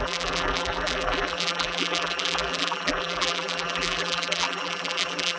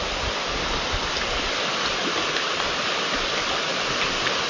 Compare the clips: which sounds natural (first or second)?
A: second